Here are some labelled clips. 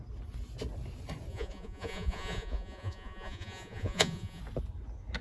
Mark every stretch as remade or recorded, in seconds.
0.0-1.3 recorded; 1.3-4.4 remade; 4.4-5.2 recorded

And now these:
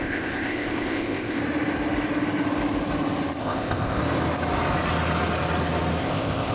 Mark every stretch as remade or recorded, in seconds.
0.0-1.4 remade; 1.4-3.4 recorded; 3.4-4.0 remade; 4.0-6.0 recorded; 6.0-6.5 remade

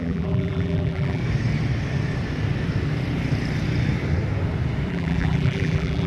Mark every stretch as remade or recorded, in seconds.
0.0-1.2 remade; 1.2-4.9 recorded; 4.9-6.1 remade

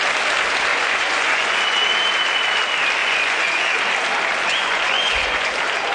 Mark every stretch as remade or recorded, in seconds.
0.0-0.7 recorded; 0.7-1.8 remade; 1.8-3.0 recorded; 3.0-3.6 remade; 3.6-4.5 recorded; 4.5-5.5 remade; 5.5-5.9 recorded

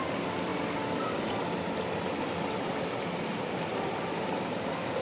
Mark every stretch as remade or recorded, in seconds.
0.0-5.0 recorded